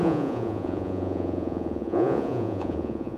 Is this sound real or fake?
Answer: fake